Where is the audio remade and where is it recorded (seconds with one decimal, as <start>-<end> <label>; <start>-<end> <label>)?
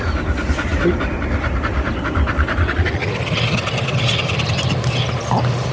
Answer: 0.0-5.7 recorded